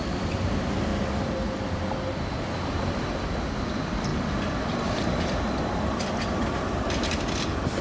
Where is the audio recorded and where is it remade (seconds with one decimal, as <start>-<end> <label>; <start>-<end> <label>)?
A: 0.0-0.9 remade; 0.9-2.7 recorded; 2.7-4.1 remade; 4.1-4.6 recorded; 4.6-7.8 remade